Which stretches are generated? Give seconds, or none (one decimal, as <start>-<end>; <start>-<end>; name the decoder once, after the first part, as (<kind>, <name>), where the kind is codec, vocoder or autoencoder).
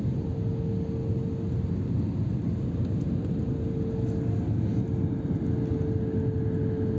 none